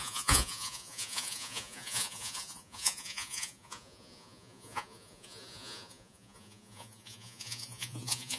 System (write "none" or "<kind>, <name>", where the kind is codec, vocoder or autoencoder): vocoder, Vocos